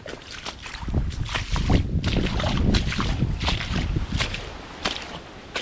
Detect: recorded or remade recorded